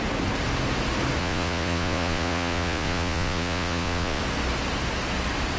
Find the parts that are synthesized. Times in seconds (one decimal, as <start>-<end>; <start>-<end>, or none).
1.2-4.2